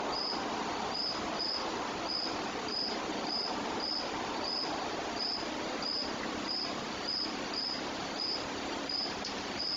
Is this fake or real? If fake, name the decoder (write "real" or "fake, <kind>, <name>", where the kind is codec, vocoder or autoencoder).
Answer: fake, vocoder, BigVGAN v2